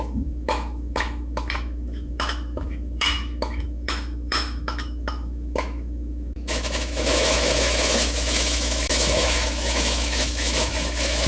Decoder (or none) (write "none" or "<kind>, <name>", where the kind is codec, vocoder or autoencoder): autoencoder, DAC-VAE